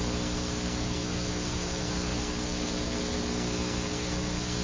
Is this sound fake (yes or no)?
yes